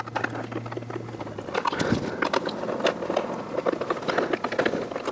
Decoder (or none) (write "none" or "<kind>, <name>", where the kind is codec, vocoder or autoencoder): none